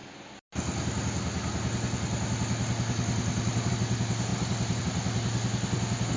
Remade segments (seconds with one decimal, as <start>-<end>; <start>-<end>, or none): none